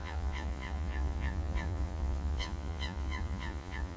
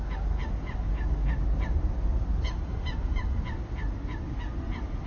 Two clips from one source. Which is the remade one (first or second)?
first